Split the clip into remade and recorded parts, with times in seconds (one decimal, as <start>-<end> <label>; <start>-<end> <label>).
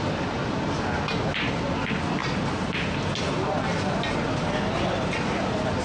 0.0-5.8 recorded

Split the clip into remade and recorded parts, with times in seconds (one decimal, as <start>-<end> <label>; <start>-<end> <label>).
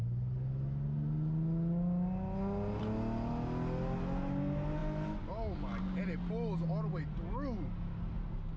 0.0-8.6 recorded